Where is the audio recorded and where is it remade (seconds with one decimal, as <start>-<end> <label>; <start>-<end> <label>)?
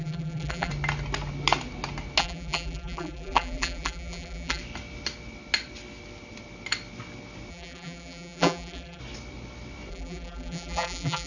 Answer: 0.0-0.7 remade; 0.7-2.2 recorded; 2.2-4.6 remade; 4.6-7.5 recorded; 7.5-9.0 remade; 9.0-9.9 recorded; 9.9-11.3 remade